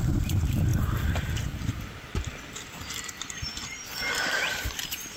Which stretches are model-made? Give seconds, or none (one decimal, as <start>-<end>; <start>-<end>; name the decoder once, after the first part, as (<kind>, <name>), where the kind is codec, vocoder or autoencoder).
0.0-5.2 (vocoder, BigVGAN v2)